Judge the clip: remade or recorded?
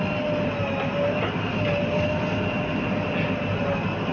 recorded